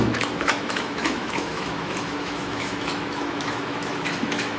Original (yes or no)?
no